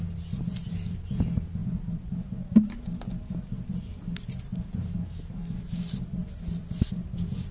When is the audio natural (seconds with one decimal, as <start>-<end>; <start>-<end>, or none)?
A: 0.0-1.6; 2.8-4.5; 5.1-7.5